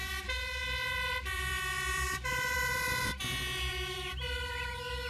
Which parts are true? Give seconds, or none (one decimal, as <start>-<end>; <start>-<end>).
3.1-3.7; 4.5-5.1